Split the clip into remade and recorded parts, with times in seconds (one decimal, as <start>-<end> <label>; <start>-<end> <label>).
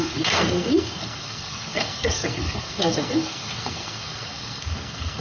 0.0-5.2 remade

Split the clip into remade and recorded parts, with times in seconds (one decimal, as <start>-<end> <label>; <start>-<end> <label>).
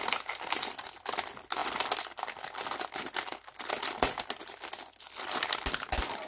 0.0-6.3 recorded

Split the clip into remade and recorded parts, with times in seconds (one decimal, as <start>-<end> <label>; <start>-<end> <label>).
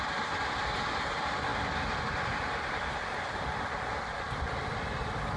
0.0-5.4 recorded